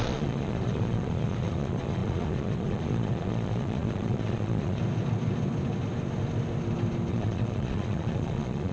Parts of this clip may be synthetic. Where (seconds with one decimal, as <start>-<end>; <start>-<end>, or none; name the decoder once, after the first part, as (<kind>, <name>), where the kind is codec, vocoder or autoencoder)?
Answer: 0.0-4.8 (vocoder, Vocos); 7.1-8.7

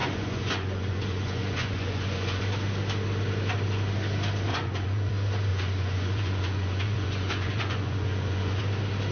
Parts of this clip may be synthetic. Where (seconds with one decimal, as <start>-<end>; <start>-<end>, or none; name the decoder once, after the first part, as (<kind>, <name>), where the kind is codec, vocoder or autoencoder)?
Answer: 0.0-2.4 (vocoder, Vocos); 4.5-5.1; 5.5-8.6